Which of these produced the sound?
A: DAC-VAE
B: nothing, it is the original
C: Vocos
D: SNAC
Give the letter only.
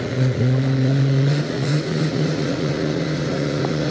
C